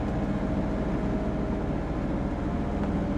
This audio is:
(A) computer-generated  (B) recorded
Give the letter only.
B